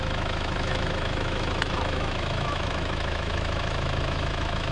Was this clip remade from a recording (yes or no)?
yes